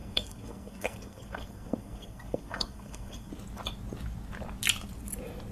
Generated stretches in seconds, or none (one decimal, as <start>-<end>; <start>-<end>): 0.0-3.3